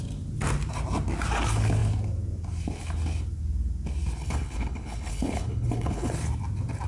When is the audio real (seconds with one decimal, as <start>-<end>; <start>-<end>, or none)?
0.0-4.2; 6.1-6.9